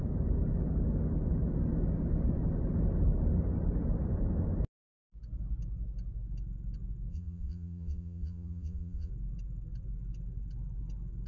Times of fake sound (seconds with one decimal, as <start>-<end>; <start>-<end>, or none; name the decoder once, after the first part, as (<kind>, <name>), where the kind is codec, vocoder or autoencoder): 7.1-9.1 (vocoder, Vocos)